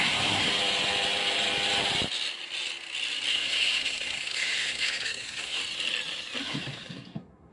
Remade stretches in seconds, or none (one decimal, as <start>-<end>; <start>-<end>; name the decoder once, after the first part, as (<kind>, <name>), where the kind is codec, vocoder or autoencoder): 0.0-0.5 (codec, SNAC); 3.3-5.6; 6.4-7.5